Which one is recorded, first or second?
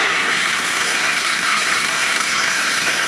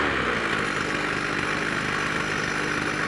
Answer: second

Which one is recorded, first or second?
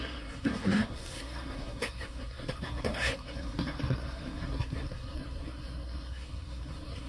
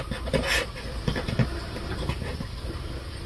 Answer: second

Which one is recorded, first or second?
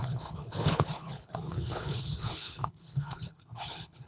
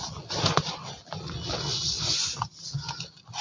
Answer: second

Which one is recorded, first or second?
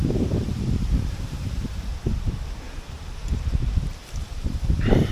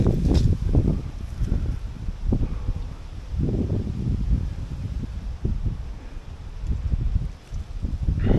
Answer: second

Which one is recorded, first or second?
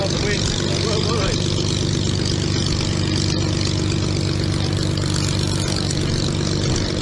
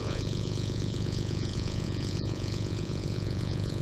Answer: first